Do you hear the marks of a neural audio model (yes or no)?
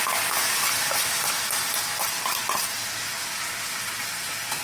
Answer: no